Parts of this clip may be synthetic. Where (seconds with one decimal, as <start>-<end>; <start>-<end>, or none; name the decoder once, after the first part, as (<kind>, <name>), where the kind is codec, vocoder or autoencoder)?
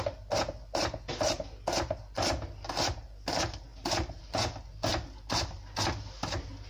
none